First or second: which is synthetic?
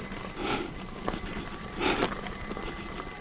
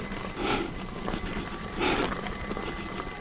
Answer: first